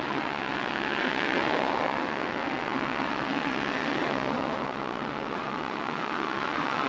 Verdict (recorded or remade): remade